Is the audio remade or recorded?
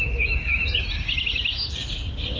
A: recorded